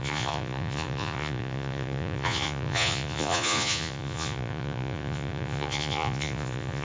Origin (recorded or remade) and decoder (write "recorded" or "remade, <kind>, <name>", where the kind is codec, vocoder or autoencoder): remade, vocoder, Vocos